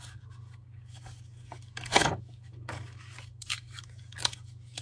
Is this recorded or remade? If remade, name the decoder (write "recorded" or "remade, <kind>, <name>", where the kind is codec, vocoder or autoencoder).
remade, codec, DAC